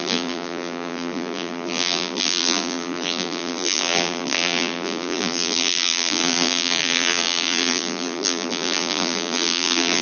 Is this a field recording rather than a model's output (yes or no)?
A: no